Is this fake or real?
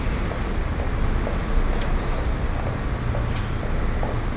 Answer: real